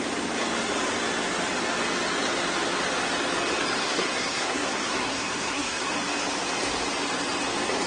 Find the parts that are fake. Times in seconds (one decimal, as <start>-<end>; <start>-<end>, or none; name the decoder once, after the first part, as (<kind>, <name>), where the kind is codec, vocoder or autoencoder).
3.8-5.9 (codec, SNAC)